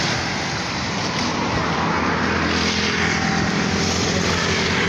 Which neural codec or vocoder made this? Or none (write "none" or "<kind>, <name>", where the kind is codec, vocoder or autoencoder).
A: none